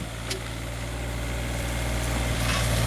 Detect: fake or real real